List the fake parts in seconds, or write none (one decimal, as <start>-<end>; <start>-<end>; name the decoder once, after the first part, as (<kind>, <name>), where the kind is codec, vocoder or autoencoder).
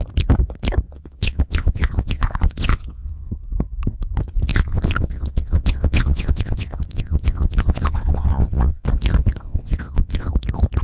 0.9-3.4 (vocoder, WaveNeXt); 4.5-8.9; 9.4-10.3